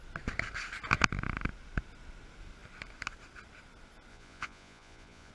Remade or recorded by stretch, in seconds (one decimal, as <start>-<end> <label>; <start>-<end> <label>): 0.0-4.1 recorded; 4.1-5.3 remade

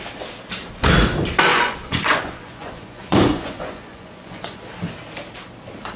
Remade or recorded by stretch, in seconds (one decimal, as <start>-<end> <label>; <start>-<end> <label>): 0.0-1.5 recorded; 1.5-4.6 remade; 4.6-6.0 recorded

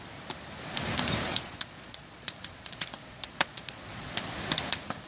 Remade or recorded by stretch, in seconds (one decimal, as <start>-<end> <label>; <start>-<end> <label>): 0.0-1.3 recorded; 1.3-4.1 remade; 4.1-5.1 recorded

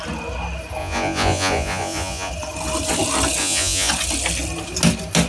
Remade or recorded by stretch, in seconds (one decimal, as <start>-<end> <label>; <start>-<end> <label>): 0.0-0.8 recorded; 0.8-2.3 remade; 2.3-3.4 recorded; 3.4-3.9 remade; 3.9-5.3 recorded